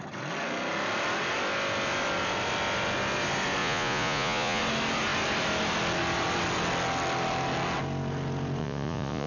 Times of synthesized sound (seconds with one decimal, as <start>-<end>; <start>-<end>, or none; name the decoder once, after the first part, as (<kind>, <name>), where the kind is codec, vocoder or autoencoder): 3.6-4.6 (vocoder, Vocos); 8.6-9.3